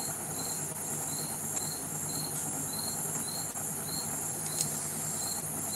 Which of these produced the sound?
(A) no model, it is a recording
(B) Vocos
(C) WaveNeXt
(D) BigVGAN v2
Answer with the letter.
A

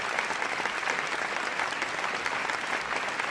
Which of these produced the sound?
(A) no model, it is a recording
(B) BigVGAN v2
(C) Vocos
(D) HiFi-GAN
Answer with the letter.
A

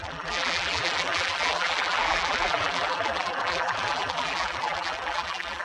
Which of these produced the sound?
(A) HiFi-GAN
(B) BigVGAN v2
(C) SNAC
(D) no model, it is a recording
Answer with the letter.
B